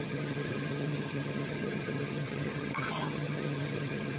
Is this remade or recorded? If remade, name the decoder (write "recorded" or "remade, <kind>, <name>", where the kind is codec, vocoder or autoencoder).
remade, vocoder, HiFi-GAN